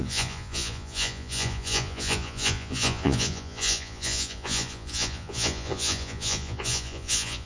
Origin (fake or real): fake